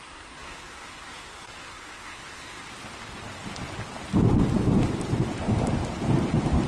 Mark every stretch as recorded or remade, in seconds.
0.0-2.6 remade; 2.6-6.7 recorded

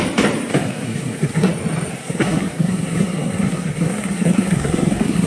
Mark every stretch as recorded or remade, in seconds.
0.0-0.5 recorded; 0.5-1.5 remade; 1.5-1.9 recorded; 1.9-5.3 remade